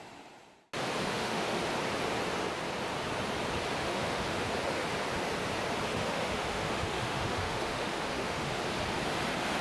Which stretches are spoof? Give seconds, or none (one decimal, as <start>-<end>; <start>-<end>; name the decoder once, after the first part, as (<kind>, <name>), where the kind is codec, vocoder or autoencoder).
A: 1.1-1.6 (autoencoder, DAC-VAE); 3.8-4.5; 5.9-8.6